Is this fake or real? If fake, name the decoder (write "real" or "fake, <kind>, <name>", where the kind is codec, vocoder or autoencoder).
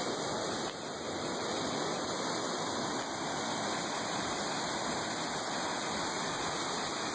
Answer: real